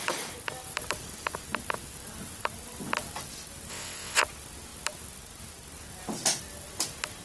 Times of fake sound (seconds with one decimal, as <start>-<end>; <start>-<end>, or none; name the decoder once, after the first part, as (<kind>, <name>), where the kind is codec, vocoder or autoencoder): 3.7-4.2 (vocoder, WaveNeXt)